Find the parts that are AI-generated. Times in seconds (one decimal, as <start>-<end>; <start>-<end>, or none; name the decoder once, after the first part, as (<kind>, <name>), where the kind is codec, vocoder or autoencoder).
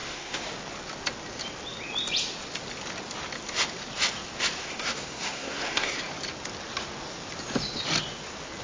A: 0.0-0.5 (codec, SNAC); 4.6-6.0